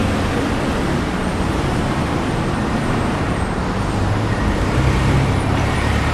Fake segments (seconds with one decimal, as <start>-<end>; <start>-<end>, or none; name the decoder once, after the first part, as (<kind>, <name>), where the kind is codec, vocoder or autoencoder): 1.1-6.1 (vocoder, BigVGAN v2)